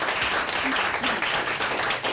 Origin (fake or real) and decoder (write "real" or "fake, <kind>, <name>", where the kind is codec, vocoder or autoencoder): real